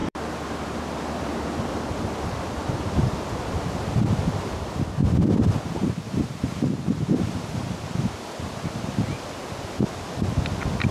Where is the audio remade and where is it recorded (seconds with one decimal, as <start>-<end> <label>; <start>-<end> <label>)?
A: 0.0-10.9 remade